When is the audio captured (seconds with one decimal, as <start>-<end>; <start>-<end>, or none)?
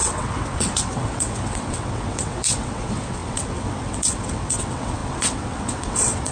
none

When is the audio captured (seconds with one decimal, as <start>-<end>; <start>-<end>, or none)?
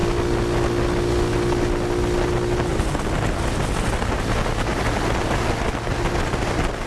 0.0-4.7; 5.2-6.9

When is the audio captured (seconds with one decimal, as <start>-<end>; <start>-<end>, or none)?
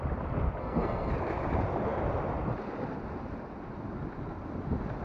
0.0-0.6; 1.1-5.0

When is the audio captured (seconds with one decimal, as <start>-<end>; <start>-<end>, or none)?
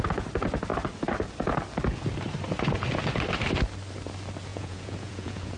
0.0-4.5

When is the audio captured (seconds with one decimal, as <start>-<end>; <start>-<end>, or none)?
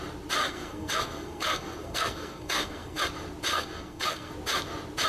0.0-0.4; 3.0-3.5; 4.3-5.1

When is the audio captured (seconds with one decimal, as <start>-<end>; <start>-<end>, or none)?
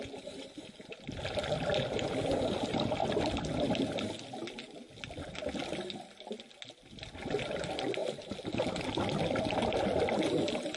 0.0-10.8